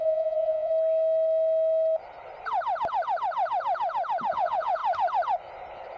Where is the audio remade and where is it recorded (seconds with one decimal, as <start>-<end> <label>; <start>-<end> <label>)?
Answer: 0.0-0.7 remade; 0.7-4.3 recorded; 4.3-4.8 remade; 4.8-6.0 recorded